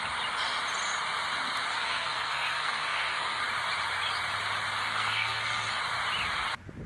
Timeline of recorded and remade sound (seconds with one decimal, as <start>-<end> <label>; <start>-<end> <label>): 0.0-1.7 recorded; 1.7-3.4 remade; 3.4-4.8 recorded; 4.8-5.8 remade; 5.8-6.9 recorded

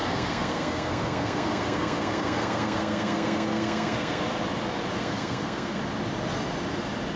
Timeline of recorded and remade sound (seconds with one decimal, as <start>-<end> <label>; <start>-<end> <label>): 0.0-4.2 remade; 4.2-5.0 recorded; 5.0-5.8 remade; 5.8-7.2 recorded

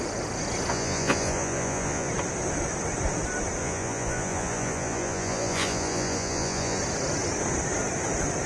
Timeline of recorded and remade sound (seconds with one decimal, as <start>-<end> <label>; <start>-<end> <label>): 0.0-0.7 recorded; 0.7-2.1 remade; 2.1-3.6 recorded; 3.6-6.8 remade; 6.8-8.5 recorded

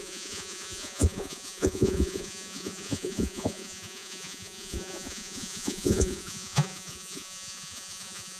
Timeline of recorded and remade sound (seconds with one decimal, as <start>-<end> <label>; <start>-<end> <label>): 0.0-8.4 remade